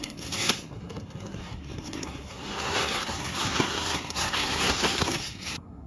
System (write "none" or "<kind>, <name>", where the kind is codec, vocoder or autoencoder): codec, SNAC